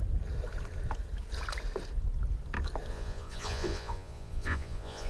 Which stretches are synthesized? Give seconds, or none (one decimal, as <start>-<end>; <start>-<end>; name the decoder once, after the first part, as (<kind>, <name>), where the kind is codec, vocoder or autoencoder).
2.9-5.1 (vocoder, Vocos)